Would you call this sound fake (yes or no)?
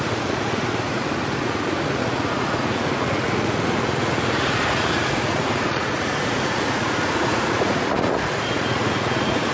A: yes